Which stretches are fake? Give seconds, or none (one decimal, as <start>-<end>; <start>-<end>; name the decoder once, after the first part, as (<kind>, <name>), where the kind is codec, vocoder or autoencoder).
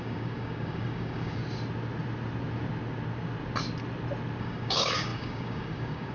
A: 0.0-1.4 (codec, DAC); 4.4-6.1